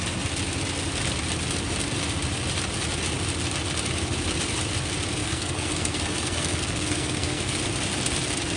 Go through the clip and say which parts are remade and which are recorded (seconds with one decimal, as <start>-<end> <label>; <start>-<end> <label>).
0.0-5.2 recorded; 5.2-7.6 remade; 7.6-8.6 recorded